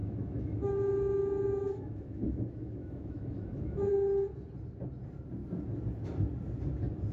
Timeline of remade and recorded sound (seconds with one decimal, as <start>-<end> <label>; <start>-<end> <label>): 0.0-3.9 remade; 3.9-7.1 recorded